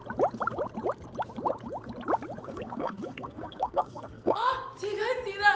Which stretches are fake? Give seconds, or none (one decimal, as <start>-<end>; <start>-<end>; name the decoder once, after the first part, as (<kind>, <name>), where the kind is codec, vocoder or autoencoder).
2.4-4.5 (codec, SNAC)